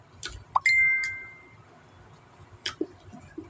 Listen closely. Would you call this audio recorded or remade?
recorded